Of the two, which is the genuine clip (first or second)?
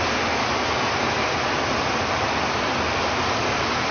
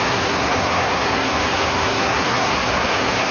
first